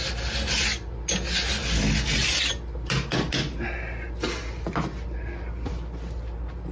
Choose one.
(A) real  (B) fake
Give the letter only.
A